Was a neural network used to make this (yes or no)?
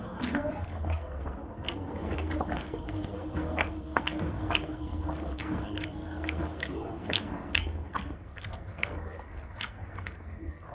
yes